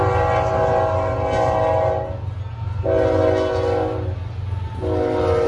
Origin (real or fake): real